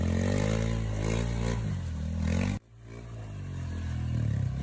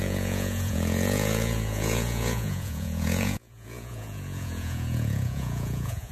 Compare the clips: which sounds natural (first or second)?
first